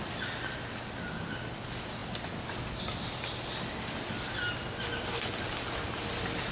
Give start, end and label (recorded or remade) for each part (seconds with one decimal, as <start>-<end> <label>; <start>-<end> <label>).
0.0-6.5 recorded